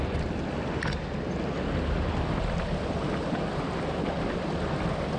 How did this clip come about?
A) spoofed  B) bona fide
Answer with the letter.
B